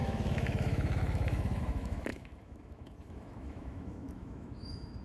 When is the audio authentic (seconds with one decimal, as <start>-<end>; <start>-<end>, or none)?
none